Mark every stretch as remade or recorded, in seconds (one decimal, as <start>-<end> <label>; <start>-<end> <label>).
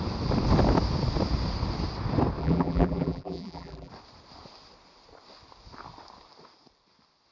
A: 0.0-2.4 recorded; 2.4-3.9 remade; 3.9-7.3 recorded